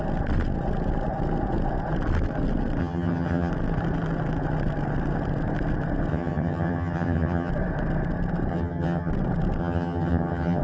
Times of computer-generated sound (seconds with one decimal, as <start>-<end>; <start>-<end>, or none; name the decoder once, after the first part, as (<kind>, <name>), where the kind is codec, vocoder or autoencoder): 2.8-3.5 (vocoder, HiFi-GAN); 6.1-7.5; 8.5-9.1; 9.6-10.6